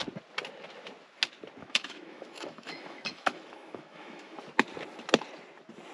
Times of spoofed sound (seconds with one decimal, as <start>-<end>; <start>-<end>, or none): 1.6-4.4